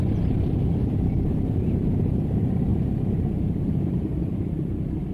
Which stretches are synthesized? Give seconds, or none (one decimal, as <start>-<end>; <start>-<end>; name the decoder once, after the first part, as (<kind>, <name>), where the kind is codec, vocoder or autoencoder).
0.0-2.7 (vocoder, BigVGAN v2); 4.2-5.1